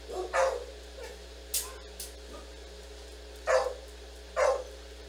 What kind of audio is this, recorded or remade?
recorded